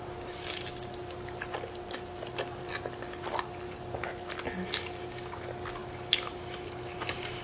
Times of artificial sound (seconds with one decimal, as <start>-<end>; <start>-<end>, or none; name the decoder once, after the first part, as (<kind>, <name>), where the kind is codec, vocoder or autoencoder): none